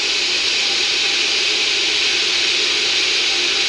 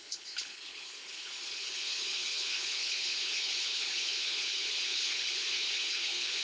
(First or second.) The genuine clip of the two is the first